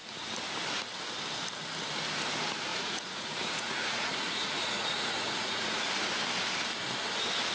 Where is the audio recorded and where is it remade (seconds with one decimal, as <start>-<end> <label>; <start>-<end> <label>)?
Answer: 0.0-2.7 recorded; 2.7-5.9 remade; 5.9-7.5 recorded